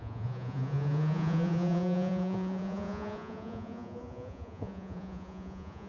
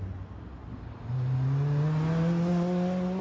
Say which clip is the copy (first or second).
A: first